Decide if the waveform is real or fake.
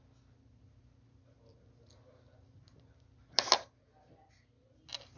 real